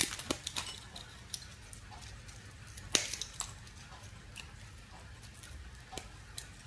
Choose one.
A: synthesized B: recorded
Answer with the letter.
B